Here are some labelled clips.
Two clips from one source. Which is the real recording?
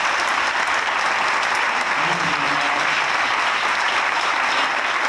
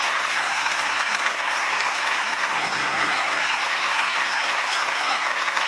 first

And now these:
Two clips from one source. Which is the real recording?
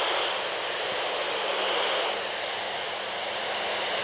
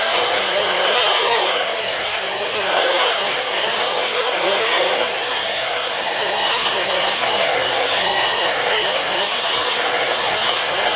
first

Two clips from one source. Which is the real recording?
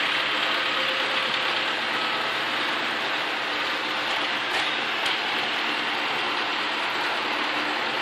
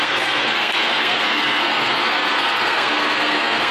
first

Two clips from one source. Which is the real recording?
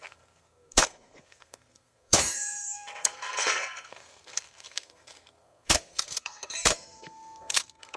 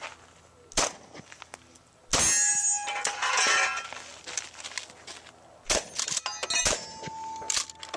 second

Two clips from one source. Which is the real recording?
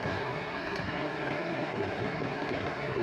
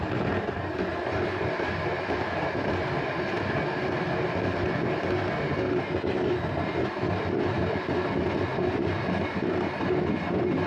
second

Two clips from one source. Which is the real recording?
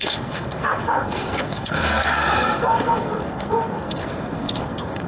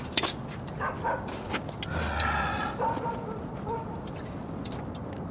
second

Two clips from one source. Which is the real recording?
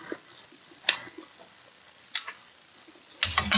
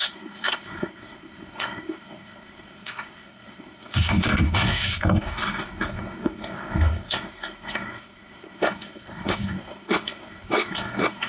first